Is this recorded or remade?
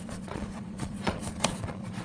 remade